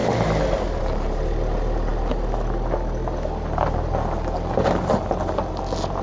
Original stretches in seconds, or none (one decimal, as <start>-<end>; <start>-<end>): 0.0-6.0